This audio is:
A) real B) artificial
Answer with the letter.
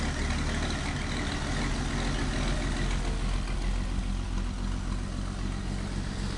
A